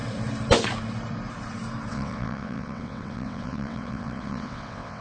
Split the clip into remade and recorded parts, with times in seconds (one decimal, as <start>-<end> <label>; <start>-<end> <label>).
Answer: 0.0-1.9 recorded; 1.9-5.0 remade